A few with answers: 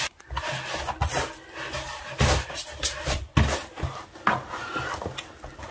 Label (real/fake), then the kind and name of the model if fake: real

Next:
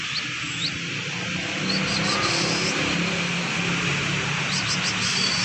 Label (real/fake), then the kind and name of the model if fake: real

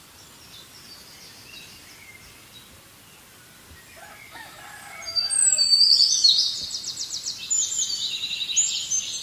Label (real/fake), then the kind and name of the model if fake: real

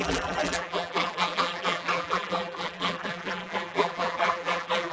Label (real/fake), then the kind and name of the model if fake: fake, vocoder, BigVGAN v2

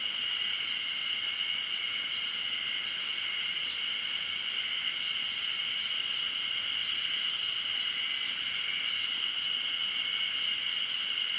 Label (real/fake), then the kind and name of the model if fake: real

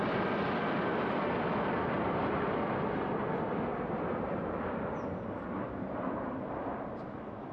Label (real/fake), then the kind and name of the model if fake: fake, vocoder, BigVGAN v2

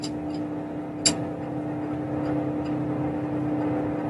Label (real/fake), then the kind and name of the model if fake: real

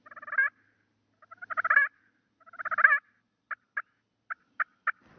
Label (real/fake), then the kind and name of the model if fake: real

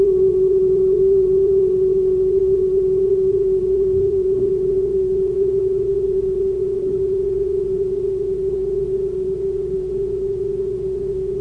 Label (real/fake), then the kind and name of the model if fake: fake, vocoder, Vocos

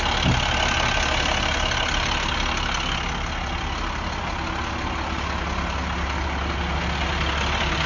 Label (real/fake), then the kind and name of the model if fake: real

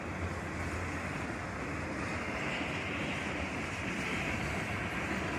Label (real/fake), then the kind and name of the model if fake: real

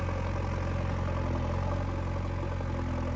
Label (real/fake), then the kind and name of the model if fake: real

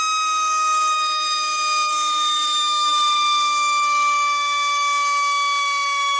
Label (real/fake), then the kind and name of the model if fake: fake, autoencoder, DAC-VAE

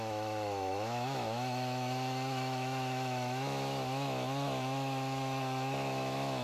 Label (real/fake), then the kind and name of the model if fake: fake, autoencoder, DAC-VAE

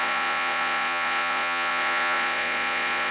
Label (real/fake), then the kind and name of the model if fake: fake, vocoder, Vocos